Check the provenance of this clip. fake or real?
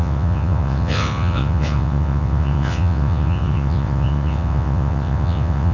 fake